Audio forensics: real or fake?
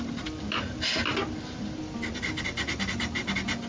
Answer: real